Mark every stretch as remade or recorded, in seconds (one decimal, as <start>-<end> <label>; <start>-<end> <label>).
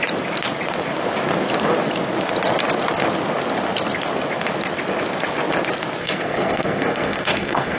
0.0-6.0 recorded; 6.0-7.8 remade